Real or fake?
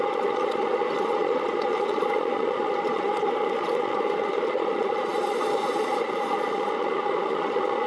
fake